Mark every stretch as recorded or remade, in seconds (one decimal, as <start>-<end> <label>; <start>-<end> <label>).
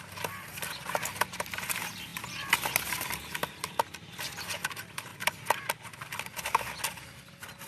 0.0-7.7 recorded